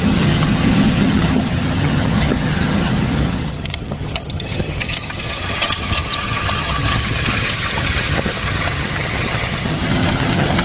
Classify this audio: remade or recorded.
remade